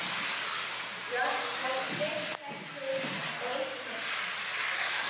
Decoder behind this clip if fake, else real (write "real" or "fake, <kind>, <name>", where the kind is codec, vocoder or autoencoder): real